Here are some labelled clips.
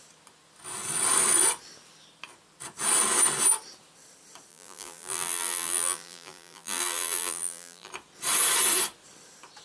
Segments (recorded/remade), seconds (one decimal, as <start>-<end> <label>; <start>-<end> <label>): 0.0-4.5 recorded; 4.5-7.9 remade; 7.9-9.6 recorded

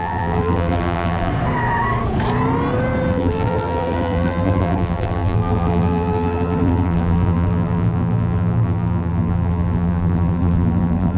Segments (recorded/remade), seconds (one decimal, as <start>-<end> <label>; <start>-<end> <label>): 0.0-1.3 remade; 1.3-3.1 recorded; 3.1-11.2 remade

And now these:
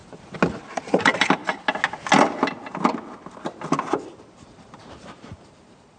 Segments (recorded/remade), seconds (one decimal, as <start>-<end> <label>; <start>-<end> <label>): 0.0-0.7 recorded; 0.7-1.4 remade; 1.4-4.1 recorded; 4.1-6.0 remade

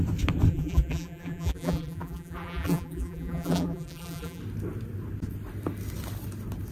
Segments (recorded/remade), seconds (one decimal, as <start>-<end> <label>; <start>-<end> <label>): 0.0-0.5 recorded; 0.5-4.4 remade; 4.4-6.7 recorded

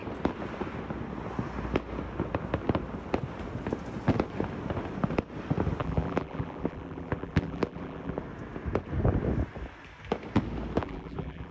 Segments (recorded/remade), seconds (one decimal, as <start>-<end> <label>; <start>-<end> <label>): 0.0-5.8 recorded; 5.8-8.2 remade; 8.2-10.8 recorded; 10.8-11.5 remade

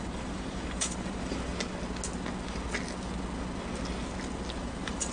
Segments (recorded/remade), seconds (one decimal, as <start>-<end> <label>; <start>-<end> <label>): 0.0-1.5 remade; 1.5-4.6 recorded; 4.6-5.1 remade